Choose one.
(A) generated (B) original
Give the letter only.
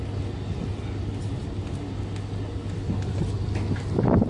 B